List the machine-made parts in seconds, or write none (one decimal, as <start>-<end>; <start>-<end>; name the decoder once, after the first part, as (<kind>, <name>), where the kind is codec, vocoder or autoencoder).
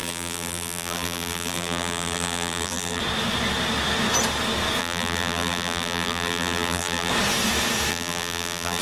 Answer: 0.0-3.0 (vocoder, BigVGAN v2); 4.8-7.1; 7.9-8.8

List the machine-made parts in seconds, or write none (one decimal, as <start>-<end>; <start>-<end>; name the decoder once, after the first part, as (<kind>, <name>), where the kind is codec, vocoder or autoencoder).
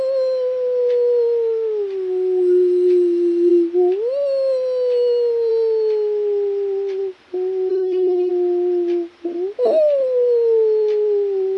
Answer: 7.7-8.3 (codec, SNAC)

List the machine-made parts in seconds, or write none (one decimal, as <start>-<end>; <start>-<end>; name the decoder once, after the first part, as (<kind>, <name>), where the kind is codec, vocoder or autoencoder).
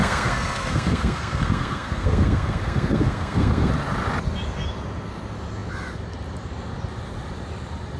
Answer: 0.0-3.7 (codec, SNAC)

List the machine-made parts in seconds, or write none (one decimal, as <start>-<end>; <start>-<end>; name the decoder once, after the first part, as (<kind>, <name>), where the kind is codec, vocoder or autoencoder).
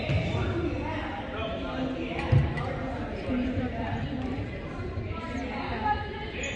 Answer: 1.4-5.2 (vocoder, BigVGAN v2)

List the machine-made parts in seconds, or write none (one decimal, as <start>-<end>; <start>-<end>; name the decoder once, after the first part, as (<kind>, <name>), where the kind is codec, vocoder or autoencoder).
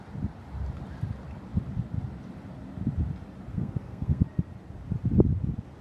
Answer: 3.5-4.2 (codec, SNAC)